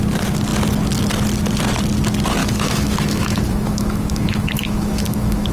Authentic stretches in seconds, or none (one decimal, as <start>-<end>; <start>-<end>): 0.0-2.4